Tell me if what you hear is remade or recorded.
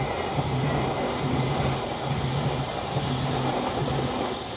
recorded